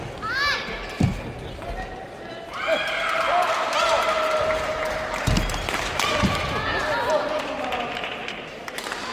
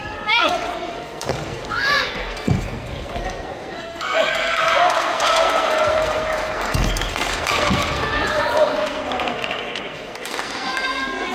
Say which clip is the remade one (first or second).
second